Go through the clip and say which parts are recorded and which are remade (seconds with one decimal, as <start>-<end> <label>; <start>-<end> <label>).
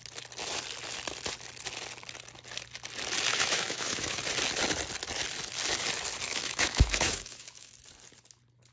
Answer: 0.0-3.3 recorded; 3.3-4.2 remade; 4.2-6.3 recorded; 6.3-7.7 remade; 7.7-8.7 recorded